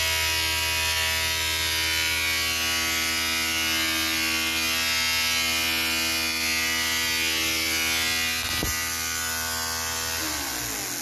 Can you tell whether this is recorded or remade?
recorded